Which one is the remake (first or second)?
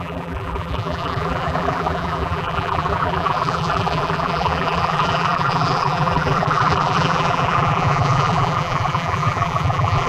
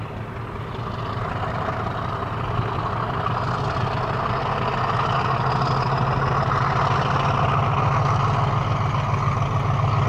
first